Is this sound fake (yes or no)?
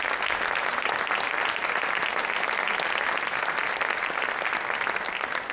no